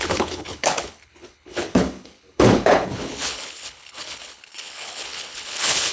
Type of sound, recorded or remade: remade